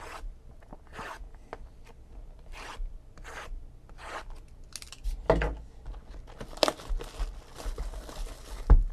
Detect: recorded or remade recorded